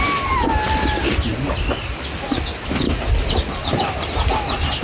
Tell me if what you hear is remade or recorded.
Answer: recorded